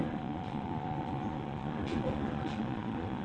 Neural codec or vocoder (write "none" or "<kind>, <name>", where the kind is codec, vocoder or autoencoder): vocoder, Vocos